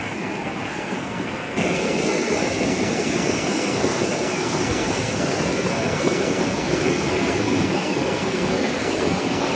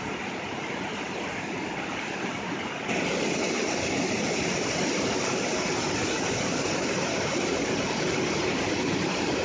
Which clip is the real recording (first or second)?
second